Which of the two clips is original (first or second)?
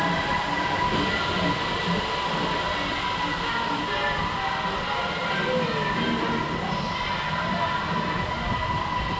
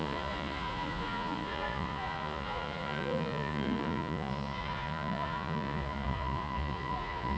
first